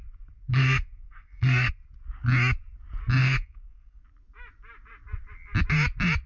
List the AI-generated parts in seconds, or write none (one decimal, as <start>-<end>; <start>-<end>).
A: 0.5-1.7; 3.2-4.0